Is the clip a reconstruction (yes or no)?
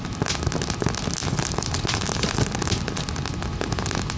no